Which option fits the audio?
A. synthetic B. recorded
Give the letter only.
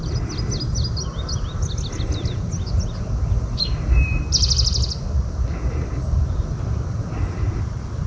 B